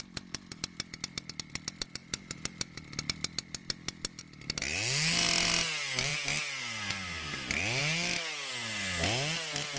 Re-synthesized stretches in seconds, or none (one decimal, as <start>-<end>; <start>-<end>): none